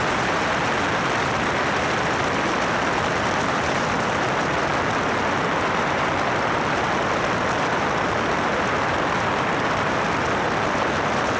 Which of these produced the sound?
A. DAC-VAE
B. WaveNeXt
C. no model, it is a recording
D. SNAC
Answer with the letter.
C